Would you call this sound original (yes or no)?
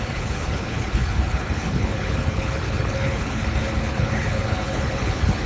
no